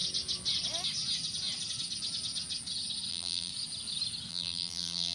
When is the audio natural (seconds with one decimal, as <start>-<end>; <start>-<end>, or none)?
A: 0.0-3.1; 3.5-4.3